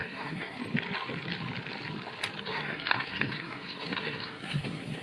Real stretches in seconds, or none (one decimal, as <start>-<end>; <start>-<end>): 0.6-2.4